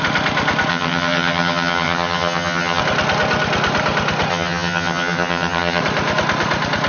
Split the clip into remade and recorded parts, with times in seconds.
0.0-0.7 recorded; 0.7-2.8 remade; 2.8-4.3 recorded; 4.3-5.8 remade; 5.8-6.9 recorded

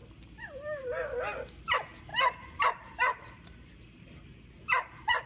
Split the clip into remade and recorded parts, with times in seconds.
0.0-2.1 recorded; 2.1-5.3 remade

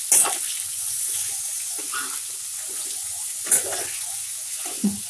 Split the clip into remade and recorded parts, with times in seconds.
0.0-0.7 recorded; 0.7-1.8 remade; 1.8-2.5 recorded; 2.5-5.1 remade

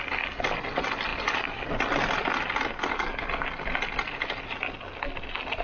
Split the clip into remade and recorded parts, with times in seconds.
0.0-5.6 recorded